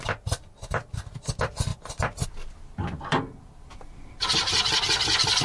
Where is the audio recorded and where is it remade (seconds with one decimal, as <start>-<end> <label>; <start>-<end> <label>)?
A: 0.0-5.4 recorded